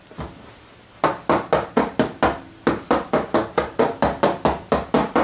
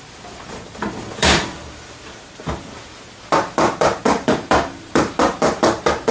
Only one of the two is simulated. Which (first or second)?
second